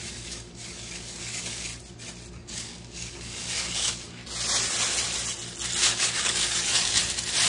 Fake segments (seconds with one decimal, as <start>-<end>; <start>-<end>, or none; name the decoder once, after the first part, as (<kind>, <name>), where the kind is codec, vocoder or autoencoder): 0.0-1.7 (codec, DAC); 2.3-4.2; 5.9-7.0